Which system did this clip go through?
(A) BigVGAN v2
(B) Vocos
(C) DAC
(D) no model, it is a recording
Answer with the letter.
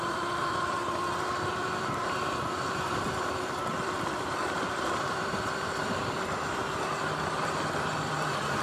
A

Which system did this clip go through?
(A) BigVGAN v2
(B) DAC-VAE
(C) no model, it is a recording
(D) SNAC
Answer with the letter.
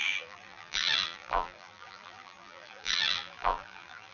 A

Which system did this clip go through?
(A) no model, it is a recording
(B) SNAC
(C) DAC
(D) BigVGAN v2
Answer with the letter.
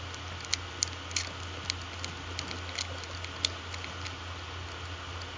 A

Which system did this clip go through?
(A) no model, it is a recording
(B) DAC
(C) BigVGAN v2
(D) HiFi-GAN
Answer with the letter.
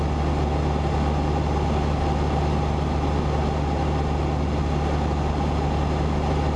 A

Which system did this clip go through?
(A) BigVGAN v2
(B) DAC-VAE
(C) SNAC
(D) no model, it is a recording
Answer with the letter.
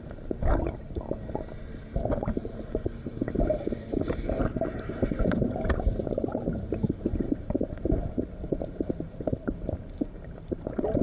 A